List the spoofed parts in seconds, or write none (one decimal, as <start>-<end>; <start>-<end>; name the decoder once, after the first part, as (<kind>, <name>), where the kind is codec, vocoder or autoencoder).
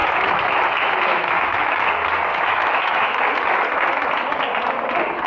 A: 0.0-1.9 (autoencoder, DAC-VAE); 2.3-3.2